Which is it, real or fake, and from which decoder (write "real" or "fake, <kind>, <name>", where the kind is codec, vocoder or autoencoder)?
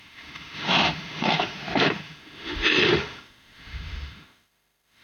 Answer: fake, autoencoder, DAC-VAE